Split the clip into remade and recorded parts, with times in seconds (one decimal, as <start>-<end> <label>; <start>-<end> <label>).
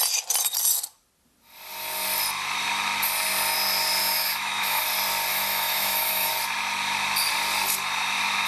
0.0-4.0 recorded; 4.0-4.8 remade; 4.8-5.3 recorded; 5.3-6.3 remade; 6.3-8.5 recorded